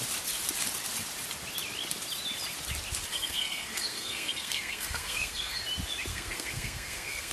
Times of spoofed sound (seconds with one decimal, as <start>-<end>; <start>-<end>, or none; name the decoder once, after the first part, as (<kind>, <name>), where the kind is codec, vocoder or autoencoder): 3.1-5.6 (codec, SNAC); 6.1-7.3